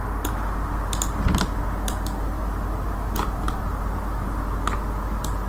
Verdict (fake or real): real